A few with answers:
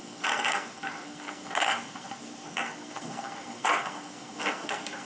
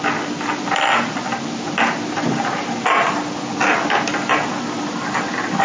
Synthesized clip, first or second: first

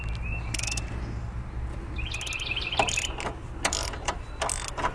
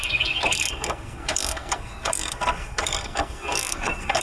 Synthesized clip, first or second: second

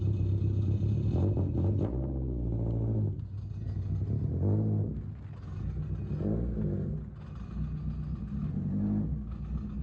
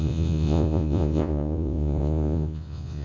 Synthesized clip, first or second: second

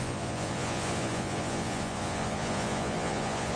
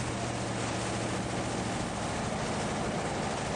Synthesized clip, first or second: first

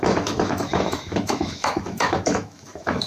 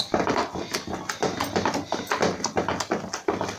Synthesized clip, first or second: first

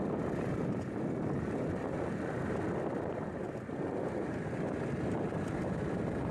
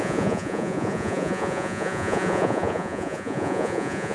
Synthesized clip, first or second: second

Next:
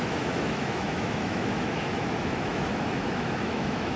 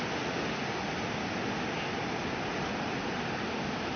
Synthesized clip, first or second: first